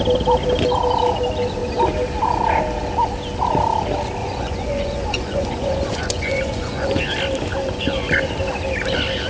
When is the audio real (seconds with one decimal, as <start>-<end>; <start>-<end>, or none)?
0.0-4.2; 7.0-9.3